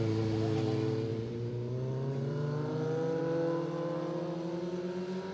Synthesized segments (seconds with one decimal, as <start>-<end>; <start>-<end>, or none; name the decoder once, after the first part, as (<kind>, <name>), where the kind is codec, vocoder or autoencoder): 1.1-3.2 (vocoder, BigVGAN v2)